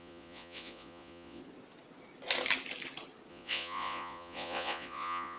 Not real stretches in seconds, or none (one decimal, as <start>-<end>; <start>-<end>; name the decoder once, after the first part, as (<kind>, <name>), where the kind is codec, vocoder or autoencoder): 0.0-1.4 (vocoder, Vocos); 3.3-5.4